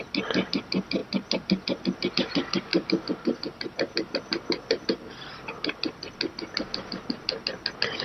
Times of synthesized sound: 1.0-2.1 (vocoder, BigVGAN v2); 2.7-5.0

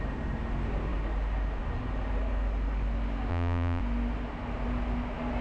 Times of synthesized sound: 3.3-3.8 (vocoder, BigVGAN v2)